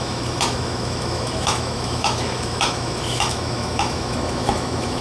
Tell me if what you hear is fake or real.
fake